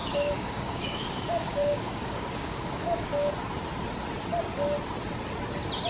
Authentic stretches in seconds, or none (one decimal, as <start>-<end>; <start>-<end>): 3.3-5.9